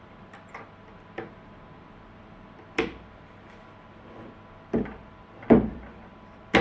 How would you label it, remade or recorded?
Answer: remade